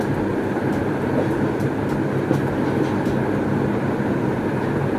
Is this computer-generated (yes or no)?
no